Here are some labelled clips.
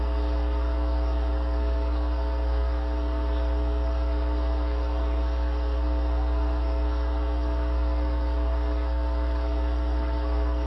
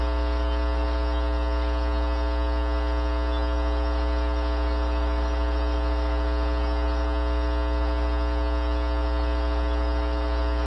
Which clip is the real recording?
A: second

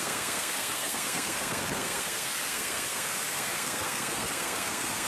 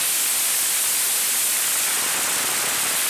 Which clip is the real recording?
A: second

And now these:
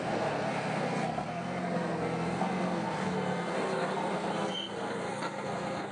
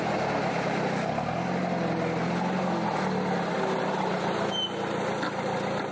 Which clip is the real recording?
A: second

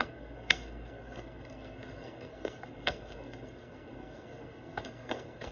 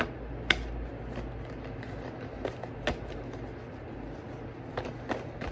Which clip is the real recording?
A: second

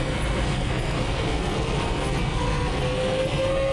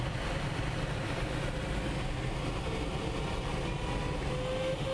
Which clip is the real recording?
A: second